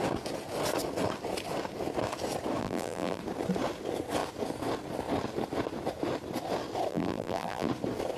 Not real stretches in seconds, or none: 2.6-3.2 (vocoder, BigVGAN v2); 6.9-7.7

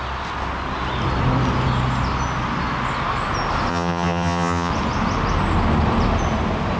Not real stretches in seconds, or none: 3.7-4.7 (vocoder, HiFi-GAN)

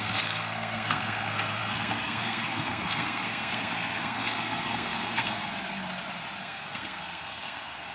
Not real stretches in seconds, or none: 0.0-5.5 (codec, SNAC); 6.4-7.9